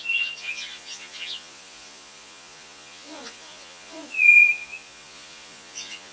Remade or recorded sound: remade